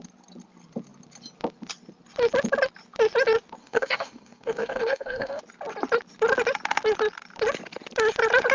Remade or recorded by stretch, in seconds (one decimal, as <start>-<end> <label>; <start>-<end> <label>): 0.0-3.6 recorded; 3.6-5.4 remade; 5.4-8.5 recorded